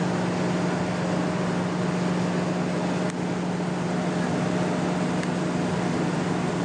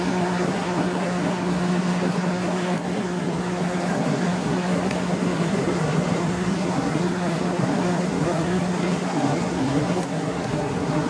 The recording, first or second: first